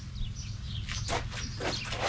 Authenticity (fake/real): real